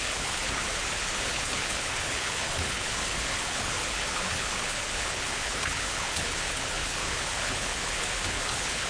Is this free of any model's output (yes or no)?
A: no